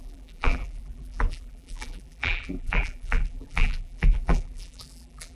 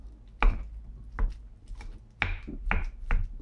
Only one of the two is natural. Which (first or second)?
second